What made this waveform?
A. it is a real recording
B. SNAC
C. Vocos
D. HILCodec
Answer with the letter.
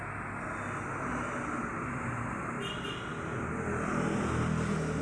A